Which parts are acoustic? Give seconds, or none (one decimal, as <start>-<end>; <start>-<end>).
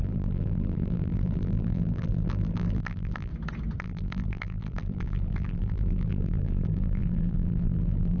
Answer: 3.3-3.8